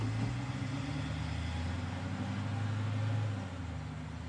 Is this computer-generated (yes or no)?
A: no